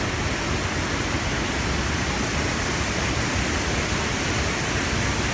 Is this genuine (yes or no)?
yes